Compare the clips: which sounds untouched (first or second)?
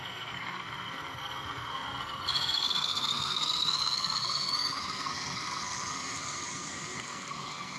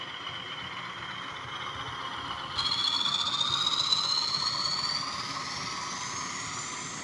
second